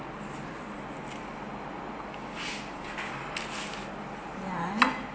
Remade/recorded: recorded